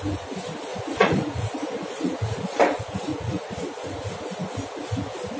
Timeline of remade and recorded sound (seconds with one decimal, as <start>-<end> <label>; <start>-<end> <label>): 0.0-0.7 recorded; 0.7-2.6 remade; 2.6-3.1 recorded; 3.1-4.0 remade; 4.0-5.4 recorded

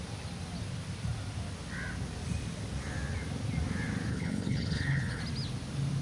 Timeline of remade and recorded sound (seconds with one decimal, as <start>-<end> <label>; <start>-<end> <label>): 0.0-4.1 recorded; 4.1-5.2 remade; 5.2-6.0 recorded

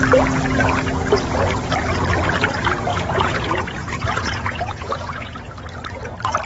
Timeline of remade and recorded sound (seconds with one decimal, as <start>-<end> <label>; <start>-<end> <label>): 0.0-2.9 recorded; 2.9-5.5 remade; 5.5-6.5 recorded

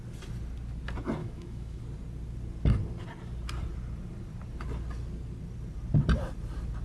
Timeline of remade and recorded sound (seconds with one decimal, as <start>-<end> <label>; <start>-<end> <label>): 0.0-1.2 recorded; 1.2-1.8 remade; 1.8-6.8 recorded